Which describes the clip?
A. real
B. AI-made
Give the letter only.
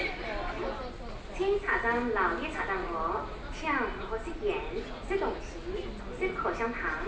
A